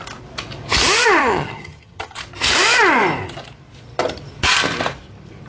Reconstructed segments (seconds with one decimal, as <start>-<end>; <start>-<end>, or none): 1.2-2.2